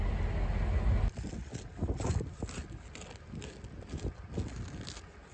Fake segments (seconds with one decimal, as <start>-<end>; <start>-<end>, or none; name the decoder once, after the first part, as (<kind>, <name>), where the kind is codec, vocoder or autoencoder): none